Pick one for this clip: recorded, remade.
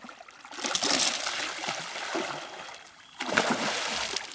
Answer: recorded